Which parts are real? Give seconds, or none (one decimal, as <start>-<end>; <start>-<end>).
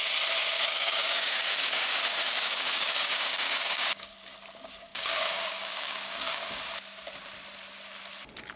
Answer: 0.0-0.4; 4.1-4.9; 6.6-8.6